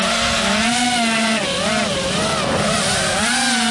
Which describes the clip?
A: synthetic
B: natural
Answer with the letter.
B